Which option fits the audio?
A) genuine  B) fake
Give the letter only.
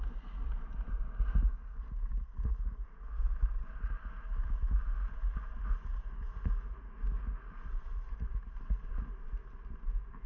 A